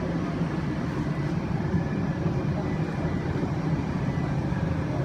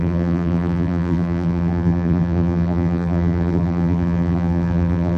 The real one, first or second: first